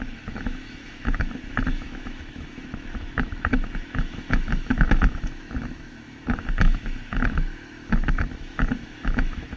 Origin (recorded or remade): remade